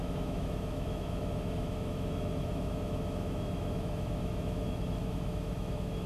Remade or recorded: remade